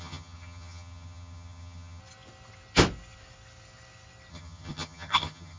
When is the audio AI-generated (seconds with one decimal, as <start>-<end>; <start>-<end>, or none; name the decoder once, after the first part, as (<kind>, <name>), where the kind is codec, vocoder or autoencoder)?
0.0-2.0 (vocoder, HiFi-GAN); 4.3-5.6